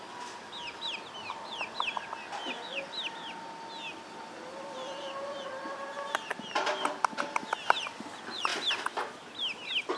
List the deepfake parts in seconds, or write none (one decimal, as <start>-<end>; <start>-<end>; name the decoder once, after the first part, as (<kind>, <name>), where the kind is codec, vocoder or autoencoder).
none